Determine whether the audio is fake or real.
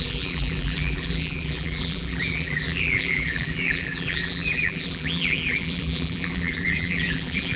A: fake